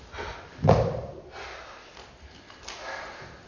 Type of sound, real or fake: real